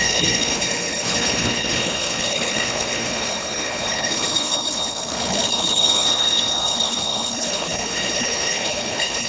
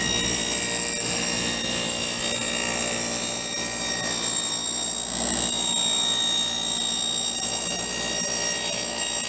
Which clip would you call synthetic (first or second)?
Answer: first